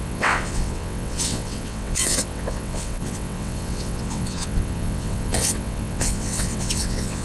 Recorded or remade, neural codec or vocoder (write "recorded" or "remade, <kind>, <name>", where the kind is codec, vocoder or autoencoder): remade, vocoder, WaveNeXt